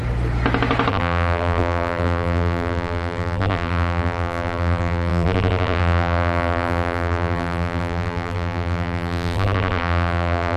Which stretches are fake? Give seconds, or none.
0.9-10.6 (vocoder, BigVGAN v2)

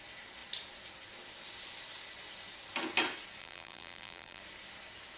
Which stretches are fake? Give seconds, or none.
3.4-4.4 (vocoder, BigVGAN v2)

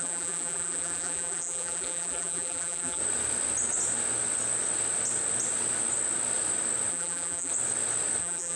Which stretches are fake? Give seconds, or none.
0.0-3.0 (vocoder, BigVGAN v2); 6.9-7.5; 8.2-8.6